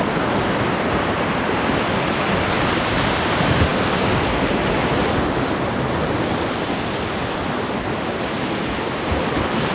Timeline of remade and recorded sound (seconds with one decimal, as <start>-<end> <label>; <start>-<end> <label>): 0.0-9.7 recorded